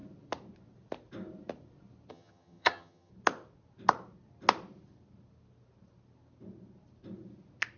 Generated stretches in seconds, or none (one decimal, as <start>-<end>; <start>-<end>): 2.1-3.1